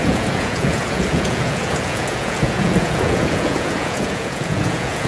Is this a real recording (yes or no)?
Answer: no